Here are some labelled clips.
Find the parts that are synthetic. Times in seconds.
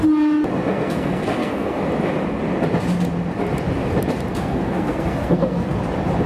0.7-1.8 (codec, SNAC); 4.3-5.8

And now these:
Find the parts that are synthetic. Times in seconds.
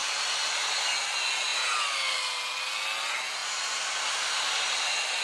0.0-0.8 (vocoder, BigVGAN v2); 3.4-5.2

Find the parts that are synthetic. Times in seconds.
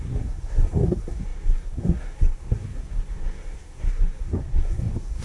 0.0-5.2 (codec, SNAC)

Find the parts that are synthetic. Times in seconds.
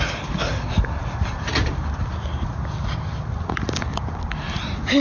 none